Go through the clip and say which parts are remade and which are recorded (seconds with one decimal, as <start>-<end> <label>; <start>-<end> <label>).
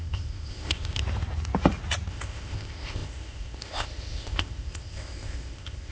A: 0.0-1.0 remade; 1.0-2.1 recorded; 2.1-5.9 remade